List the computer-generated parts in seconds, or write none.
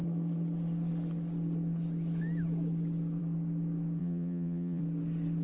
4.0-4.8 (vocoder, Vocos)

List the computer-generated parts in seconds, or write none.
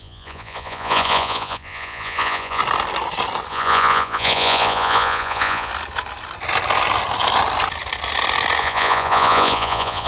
0.0-2.6 (vocoder, Vocos); 3.5-5.7; 8.6-10.1